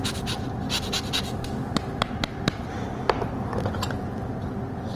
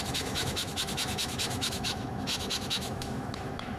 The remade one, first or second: second